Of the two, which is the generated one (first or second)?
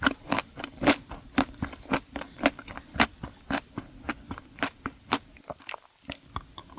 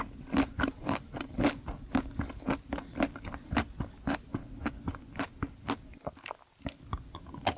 first